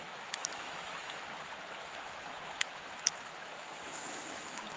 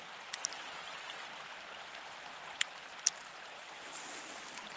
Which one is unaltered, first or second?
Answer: second